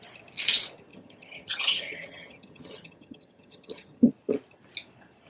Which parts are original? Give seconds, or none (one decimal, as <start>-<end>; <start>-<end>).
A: 0.0-0.9; 4.1-5.3